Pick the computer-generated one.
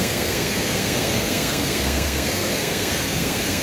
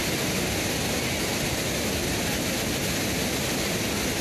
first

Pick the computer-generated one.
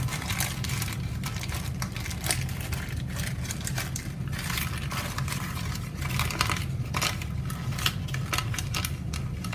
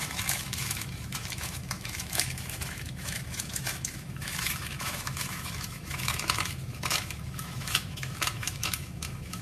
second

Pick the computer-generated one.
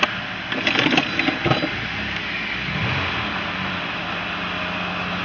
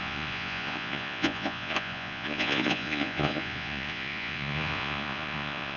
second